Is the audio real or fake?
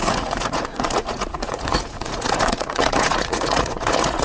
fake